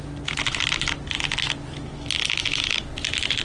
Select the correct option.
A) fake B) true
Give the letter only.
B